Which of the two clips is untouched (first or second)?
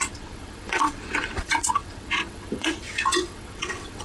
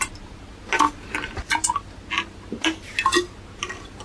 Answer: second